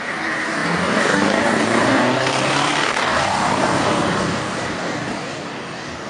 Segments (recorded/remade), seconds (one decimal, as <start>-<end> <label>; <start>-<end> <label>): 0.0-6.1 remade